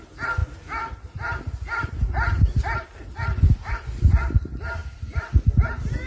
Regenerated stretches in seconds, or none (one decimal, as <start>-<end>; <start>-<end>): none